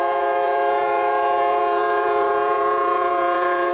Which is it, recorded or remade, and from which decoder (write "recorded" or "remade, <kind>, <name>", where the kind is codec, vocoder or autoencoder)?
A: remade, vocoder, Vocos